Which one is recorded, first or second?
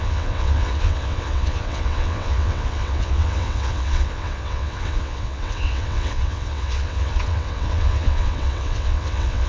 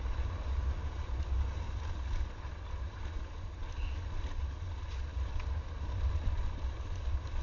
second